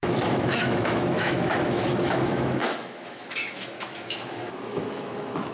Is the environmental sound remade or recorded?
remade